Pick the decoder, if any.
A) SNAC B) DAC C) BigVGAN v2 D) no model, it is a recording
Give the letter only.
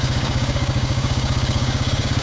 B